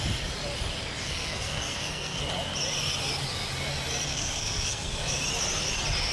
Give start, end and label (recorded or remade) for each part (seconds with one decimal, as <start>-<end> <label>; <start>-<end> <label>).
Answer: 0.0-1.0 recorded; 1.0-2.2 remade; 2.2-4.1 recorded; 4.1-5.1 remade; 5.1-6.1 recorded